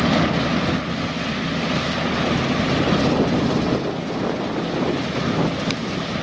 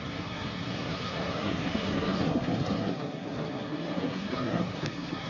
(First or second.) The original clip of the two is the first